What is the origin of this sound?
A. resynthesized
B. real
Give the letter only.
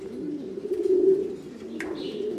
B